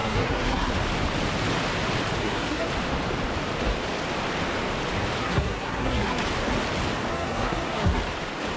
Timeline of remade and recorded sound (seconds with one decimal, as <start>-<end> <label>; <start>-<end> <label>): 0.0-0.7 remade; 0.7-2.2 recorded; 2.2-2.7 remade; 2.7-5.2 recorded; 5.2-6.2 remade; 6.2-7.1 recorded; 7.1-8.0 remade; 8.0-8.6 recorded